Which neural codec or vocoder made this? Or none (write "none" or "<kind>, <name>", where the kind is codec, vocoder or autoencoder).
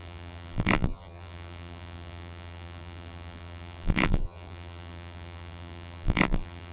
vocoder, BigVGAN v2